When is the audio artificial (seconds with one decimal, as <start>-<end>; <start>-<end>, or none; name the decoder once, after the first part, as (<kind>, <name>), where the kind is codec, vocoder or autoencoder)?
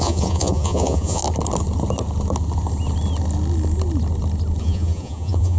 0.0-1.2 (vocoder, Vocos); 4.6-5.6